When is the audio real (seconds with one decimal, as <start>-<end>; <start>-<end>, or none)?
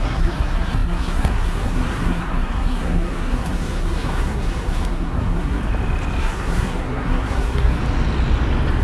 5.6-6.2; 7.8-8.8